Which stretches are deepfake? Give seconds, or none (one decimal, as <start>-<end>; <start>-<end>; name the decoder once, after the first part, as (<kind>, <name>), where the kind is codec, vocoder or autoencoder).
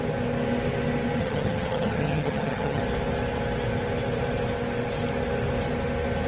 1.2-2.8 (vocoder, HiFi-GAN)